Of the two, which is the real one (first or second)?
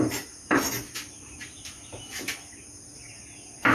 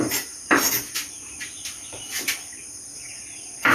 first